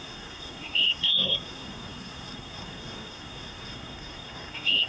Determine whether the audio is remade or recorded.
remade